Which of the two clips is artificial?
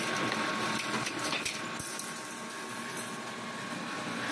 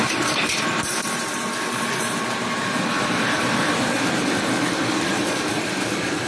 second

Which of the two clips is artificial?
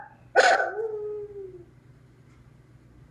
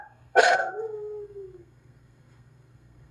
second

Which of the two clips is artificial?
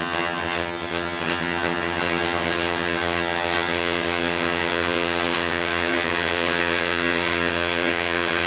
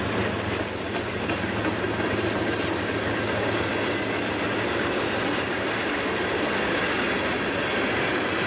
first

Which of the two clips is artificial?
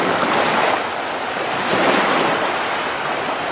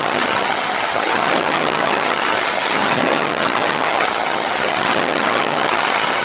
second